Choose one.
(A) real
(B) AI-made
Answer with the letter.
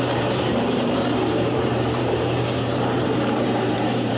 B